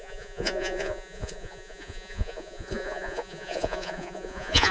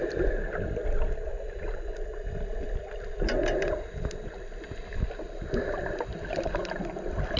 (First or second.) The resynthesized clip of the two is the first